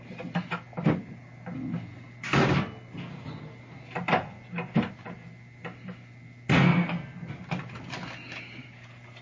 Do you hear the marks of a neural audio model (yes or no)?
no